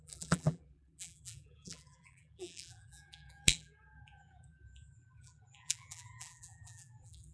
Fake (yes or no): yes